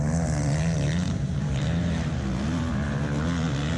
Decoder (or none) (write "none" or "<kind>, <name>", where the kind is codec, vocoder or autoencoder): none